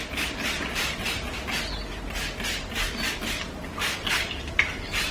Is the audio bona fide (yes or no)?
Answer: yes